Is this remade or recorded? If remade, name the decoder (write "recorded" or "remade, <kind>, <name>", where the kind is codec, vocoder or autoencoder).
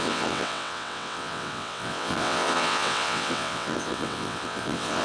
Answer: remade, vocoder, WaveNeXt